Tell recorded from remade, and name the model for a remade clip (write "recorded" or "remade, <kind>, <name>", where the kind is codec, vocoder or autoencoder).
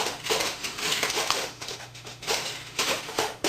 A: remade, autoencoder, DAC-VAE